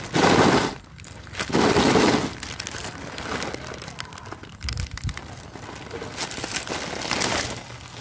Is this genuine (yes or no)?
yes